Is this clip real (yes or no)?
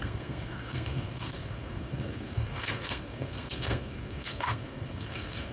no